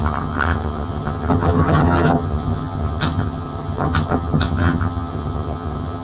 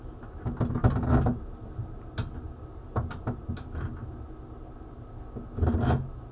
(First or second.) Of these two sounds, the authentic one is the second